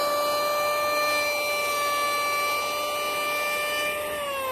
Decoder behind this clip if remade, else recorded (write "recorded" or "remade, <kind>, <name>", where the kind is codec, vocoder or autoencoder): recorded